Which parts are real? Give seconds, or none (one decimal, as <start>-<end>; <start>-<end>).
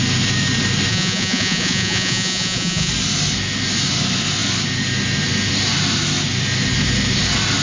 0.0-0.9; 2.9-7.6